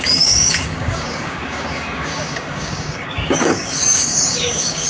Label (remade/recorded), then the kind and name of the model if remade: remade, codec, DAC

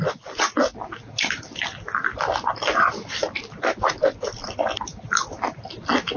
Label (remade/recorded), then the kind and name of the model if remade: recorded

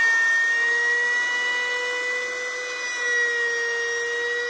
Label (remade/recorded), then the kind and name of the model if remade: recorded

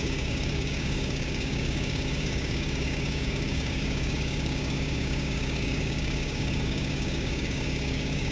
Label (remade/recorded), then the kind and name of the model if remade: remade, codec, DAC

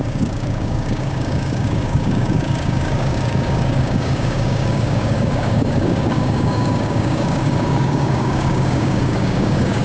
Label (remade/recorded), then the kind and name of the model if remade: remade, codec, DAC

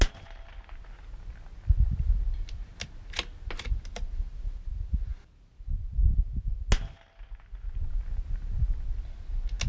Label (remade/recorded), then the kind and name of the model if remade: recorded